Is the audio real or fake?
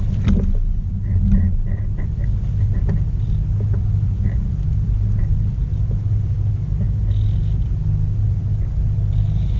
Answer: real